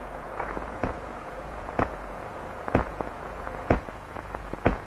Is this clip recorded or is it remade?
remade